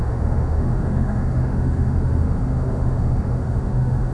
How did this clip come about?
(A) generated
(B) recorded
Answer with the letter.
A